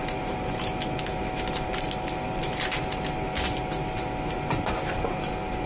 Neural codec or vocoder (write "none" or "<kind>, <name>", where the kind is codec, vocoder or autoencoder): none